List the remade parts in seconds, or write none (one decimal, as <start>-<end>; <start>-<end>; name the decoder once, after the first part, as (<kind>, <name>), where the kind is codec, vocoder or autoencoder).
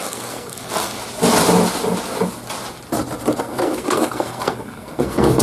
0.0-1.0 (codec, SNAC); 3.4-5.4